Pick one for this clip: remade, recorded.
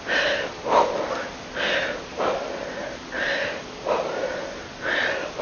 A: recorded